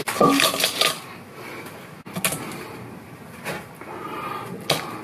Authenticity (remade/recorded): recorded